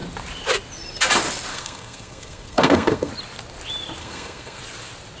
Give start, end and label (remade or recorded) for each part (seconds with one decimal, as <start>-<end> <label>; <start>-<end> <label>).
0.0-1.5 recorded; 1.5-3.1 remade; 3.1-4.0 recorded; 4.0-4.6 remade; 4.6-5.2 recorded